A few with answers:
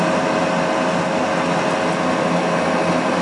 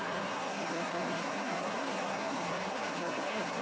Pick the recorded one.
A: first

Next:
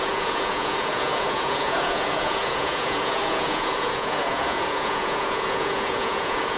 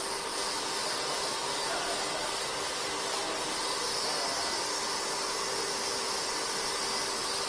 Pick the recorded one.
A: second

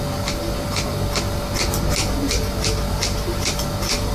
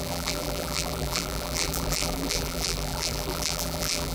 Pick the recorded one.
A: first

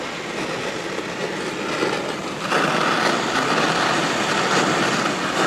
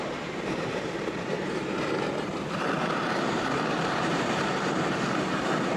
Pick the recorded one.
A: first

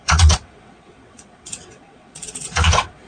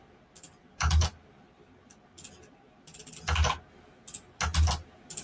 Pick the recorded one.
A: second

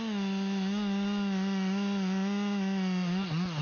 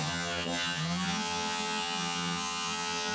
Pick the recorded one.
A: first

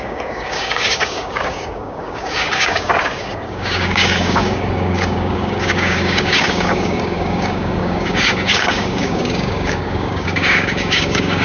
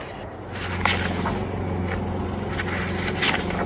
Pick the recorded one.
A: second